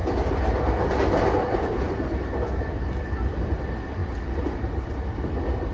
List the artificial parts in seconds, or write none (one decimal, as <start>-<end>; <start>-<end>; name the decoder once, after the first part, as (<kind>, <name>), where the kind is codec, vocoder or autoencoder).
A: none

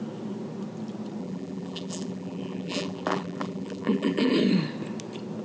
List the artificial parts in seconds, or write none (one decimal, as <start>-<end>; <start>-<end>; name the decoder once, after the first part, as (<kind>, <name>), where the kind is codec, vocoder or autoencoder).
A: 1.2-4.3 (vocoder, BigVGAN v2)